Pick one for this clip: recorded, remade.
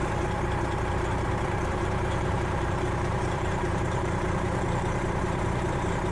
remade